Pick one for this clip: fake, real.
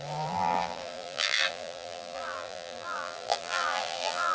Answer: fake